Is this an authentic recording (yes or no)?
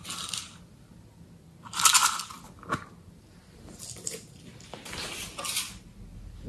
yes